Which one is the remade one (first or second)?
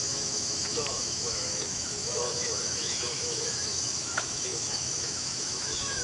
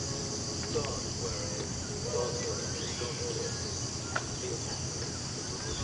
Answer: first